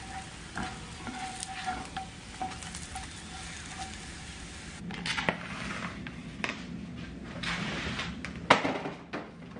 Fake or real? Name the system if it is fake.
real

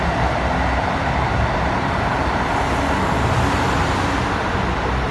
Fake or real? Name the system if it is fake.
real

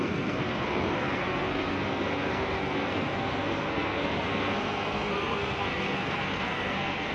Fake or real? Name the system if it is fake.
fake, codec, SNAC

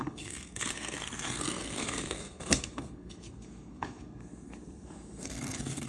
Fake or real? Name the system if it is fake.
fake, codec, SNAC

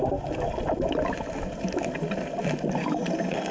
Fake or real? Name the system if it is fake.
real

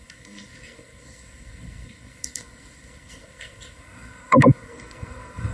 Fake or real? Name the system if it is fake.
fake, codec, SNAC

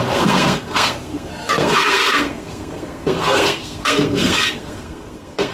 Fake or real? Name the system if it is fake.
fake, codec, SNAC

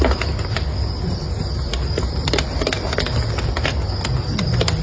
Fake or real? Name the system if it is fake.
real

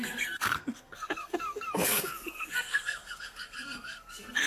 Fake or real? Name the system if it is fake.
fake, codec, SNAC